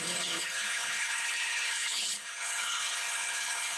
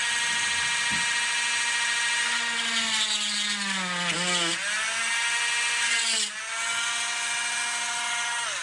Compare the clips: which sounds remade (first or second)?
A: first